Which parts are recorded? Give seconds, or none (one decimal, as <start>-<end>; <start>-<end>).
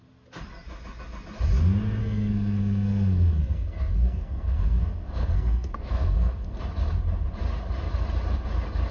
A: 0.0-2.0; 6.6-8.9